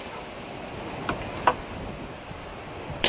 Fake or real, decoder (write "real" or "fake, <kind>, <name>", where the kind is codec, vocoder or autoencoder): real